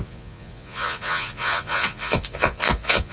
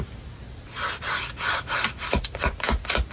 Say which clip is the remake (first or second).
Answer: first